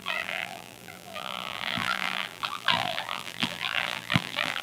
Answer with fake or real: fake